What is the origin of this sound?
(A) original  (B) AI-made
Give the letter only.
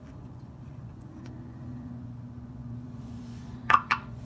B